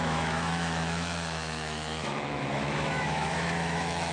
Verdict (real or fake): fake